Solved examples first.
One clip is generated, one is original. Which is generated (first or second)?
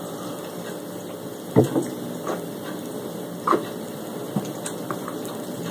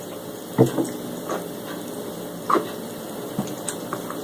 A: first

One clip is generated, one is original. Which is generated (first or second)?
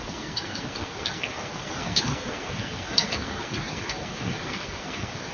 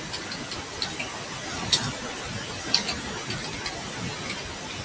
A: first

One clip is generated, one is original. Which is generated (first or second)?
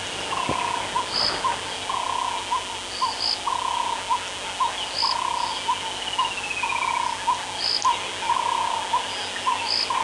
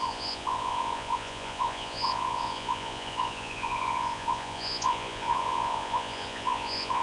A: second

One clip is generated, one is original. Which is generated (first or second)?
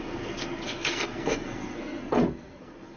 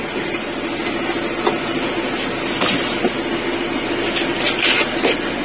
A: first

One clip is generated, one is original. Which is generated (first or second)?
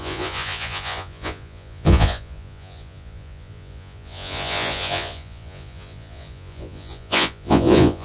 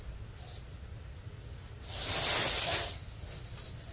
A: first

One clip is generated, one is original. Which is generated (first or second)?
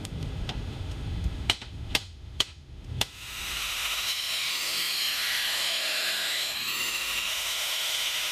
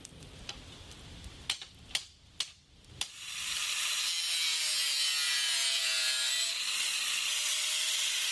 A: first